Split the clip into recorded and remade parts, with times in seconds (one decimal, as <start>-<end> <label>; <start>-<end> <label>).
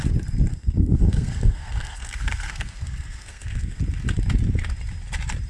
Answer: 0.0-0.5 recorded; 0.5-3.8 remade; 3.8-5.5 recorded